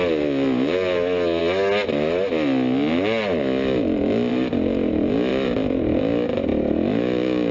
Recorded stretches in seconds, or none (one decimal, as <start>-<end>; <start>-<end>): 0.0-5.3; 6.0-6.5